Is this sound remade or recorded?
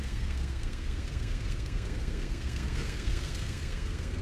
remade